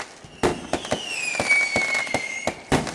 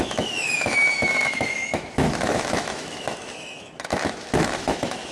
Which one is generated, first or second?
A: second